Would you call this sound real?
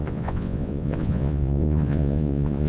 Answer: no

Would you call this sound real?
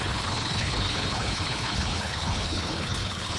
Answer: no